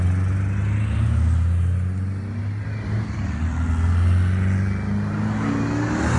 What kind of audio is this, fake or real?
real